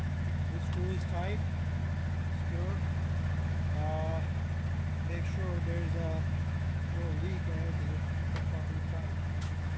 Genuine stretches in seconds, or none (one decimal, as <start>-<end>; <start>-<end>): 1.8-3.4; 4.1-4.9; 8.2-9.3